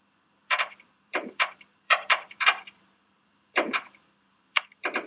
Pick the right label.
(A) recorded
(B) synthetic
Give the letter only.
B